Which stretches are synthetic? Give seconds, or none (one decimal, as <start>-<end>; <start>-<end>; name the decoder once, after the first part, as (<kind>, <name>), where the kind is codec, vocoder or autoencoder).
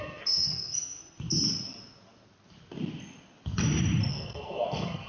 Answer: 0.0-1.0 (codec, SNAC); 4.1-5.1